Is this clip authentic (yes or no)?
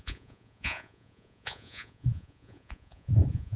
no